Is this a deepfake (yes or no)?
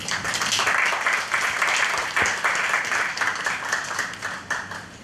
no